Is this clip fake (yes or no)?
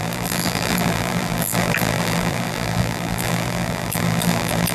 yes